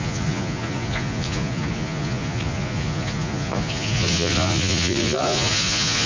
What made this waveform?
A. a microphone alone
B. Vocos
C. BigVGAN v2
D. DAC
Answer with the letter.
B